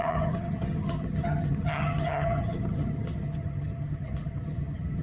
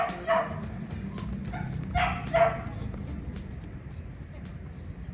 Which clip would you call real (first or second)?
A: second